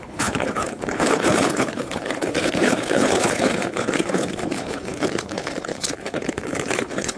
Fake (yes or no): yes